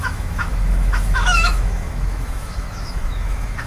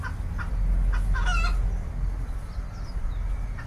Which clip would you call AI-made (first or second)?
first